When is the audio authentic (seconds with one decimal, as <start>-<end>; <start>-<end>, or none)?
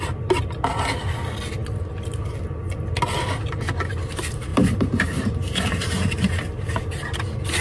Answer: 0.0-4.5